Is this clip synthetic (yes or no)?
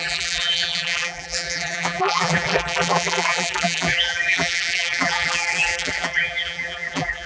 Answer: yes